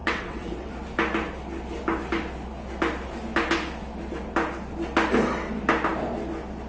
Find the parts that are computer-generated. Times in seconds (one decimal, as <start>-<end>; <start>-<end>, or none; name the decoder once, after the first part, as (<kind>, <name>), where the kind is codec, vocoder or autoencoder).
0.0-0.7 (vocoder, WaveNeXt)